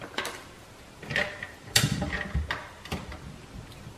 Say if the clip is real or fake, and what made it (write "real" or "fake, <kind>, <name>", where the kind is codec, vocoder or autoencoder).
fake, vocoder, BigVGAN v2